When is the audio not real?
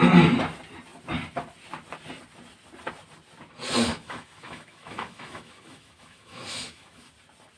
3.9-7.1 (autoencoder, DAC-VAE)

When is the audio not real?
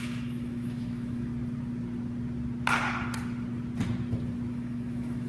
0.0-1.3 (autoencoder, DAC-VAE); 4.5-5.3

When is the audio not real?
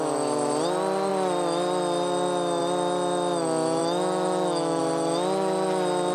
3.8-4.8 (autoencoder, DAC-VAE)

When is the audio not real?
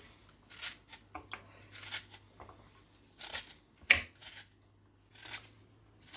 none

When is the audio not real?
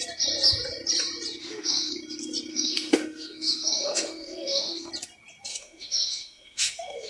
1.4-1.9 (autoencoder, DAC-VAE); 2.5-4.9; 5.5-7.1